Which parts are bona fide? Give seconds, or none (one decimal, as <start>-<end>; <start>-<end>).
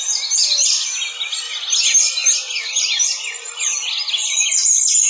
0.0-5.1